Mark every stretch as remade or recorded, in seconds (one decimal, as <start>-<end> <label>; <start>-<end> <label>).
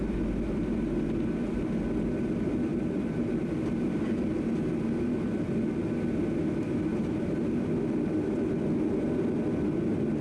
0.0-2.7 recorded; 2.7-3.5 remade; 3.5-6.9 recorded; 6.9-7.6 remade; 7.6-10.2 recorded